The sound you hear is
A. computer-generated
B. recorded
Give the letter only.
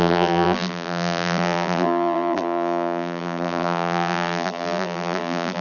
A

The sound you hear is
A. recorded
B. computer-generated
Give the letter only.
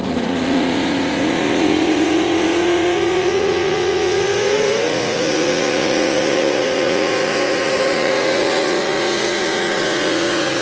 B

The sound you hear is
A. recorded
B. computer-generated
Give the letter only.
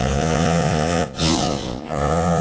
B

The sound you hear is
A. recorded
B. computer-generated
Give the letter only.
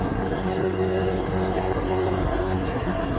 B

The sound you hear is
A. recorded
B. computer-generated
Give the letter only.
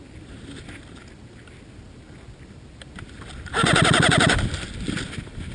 A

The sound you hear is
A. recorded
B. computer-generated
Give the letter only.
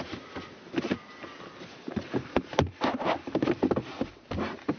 A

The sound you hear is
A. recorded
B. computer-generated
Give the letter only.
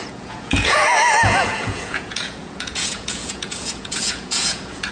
B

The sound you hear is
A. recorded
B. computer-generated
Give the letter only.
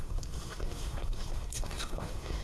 B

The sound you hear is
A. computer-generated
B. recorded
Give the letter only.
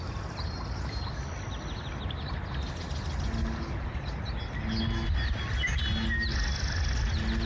B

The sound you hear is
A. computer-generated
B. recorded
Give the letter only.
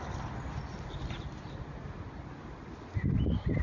B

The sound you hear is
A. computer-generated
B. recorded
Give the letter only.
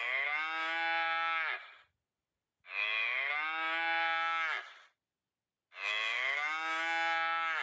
B